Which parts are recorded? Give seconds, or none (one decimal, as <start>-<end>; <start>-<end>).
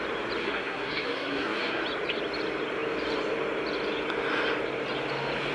0.0-0.4; 1.8-5.5